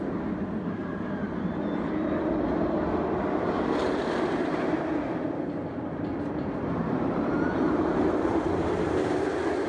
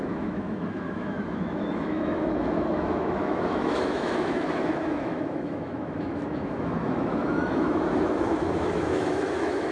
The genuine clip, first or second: first